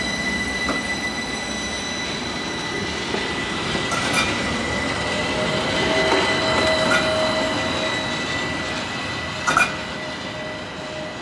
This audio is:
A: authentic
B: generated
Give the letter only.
A